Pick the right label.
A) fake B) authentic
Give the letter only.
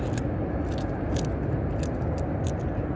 B